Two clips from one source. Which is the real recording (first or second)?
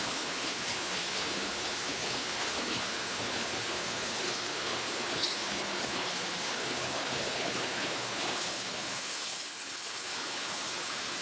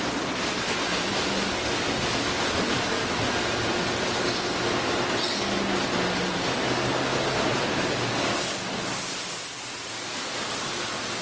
second